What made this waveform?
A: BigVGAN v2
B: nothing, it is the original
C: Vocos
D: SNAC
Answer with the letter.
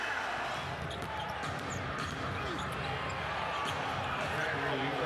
B